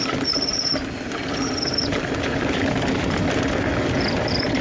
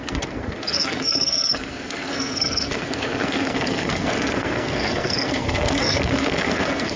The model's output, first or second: second